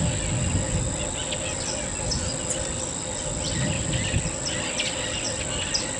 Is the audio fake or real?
real